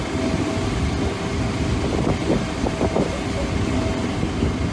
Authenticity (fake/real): real